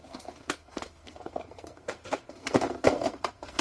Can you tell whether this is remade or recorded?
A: remade